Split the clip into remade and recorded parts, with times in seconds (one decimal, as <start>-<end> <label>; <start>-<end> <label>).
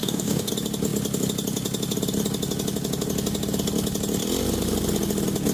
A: 0.0-0.5 remade; 0.5-5.5 recorded